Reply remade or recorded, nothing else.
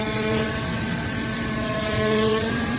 remade